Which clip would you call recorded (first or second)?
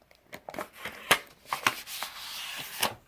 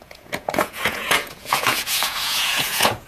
first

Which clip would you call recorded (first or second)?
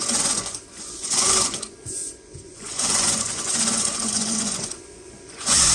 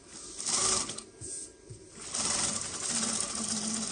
second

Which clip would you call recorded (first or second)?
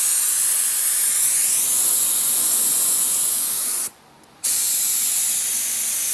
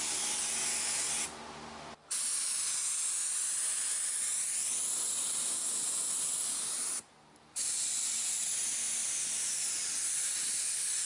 second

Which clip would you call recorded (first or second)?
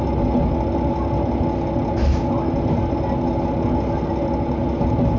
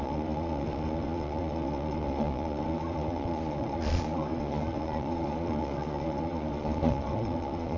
first